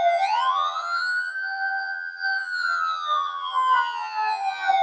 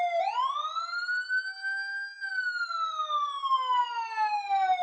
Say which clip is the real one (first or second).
second